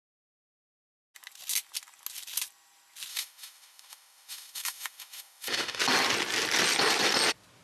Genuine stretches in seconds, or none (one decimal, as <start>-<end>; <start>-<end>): 0.0-3.1; 5.8-7.6